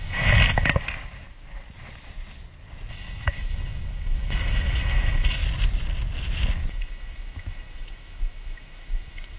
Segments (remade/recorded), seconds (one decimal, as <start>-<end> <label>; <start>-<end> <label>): 0.0-0.7 remade; 0.7-2.9 recorded; 2.9-5.4 remade; 5.4-6.7 recorded; 6.7-9.4 remade